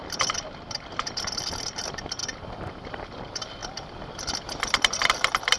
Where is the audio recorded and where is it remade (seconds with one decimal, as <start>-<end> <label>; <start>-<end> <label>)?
0.0-2.2 remade; 2.2-2.7 recorded; 2.7-5.6 remade